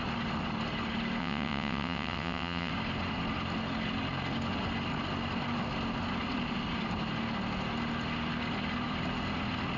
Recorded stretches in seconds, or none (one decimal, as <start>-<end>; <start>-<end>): 0.0-1.2; 2.7-9.8